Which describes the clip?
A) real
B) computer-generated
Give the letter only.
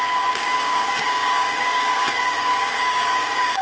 B